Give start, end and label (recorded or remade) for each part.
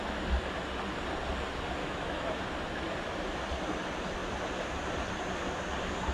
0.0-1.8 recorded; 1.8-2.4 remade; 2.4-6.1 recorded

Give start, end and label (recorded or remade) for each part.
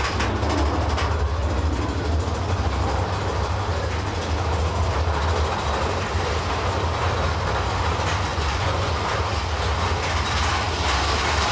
0.0-8.3 recorded; 8.3-8.9 remade; 8.9-11.5 recorded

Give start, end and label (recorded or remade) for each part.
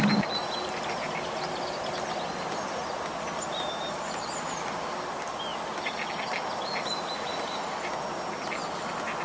0.0-9.2 recorded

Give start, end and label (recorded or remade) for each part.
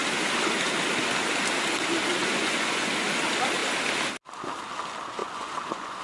0.0-2.2 recorded; 2.2-2.9 remade; 2.9-5.2 recorded; 5.2-6.0 remade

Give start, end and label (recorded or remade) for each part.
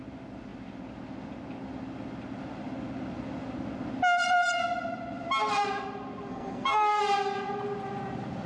0.0-6.3 recorded; 6.3-7.0 remade; 7.0-8.5 recorded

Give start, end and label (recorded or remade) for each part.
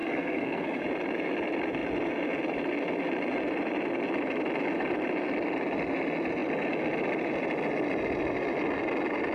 0.0-0.8 remade; 0.8-9.3 recorded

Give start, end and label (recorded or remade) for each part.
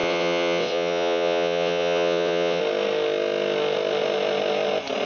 0.0-2.6 remade; 2.6-5.1 recorded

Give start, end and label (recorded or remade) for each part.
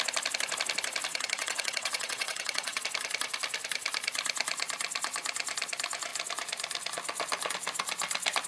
0.0-1.1 recorded; 1.1-2.8 remade; 2.8-8.5 recorded